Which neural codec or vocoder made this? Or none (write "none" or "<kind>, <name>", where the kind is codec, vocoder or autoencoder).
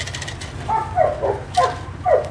none